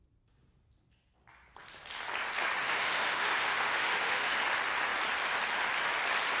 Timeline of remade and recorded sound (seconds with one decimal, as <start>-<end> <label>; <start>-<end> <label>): 0.0-2.6 recorded; 2.6-4.3 remade; 4.3-6.4 recorded